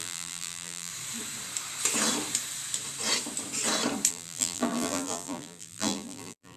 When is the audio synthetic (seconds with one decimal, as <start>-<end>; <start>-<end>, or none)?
0.0-0.9; 4.1-6.6